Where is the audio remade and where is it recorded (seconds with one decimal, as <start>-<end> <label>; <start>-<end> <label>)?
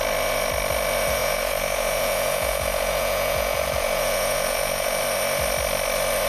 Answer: 0.0-1.2 recorded; 1.2-5.0 remade; 5.0-6.3 recorded